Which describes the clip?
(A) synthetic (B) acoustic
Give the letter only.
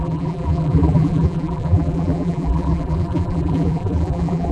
A